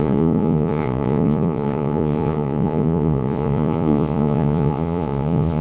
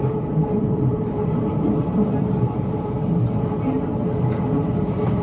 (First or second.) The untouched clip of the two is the second